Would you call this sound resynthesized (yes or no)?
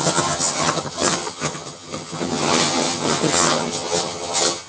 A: yes